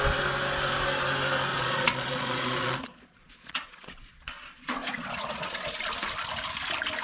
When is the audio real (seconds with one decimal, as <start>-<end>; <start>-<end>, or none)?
0.0-1.5; 5.7-7.0